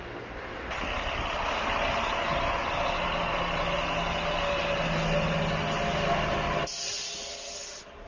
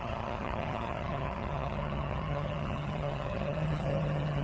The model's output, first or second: second